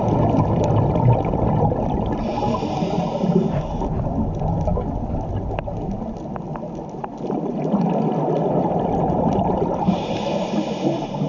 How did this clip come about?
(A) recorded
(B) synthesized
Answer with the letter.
A